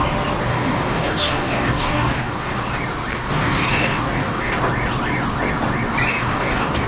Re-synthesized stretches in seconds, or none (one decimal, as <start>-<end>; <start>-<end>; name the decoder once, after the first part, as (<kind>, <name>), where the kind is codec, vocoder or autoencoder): 0.5-2.6 (codec, DAC); 3.1-4.5; 6.1-6.9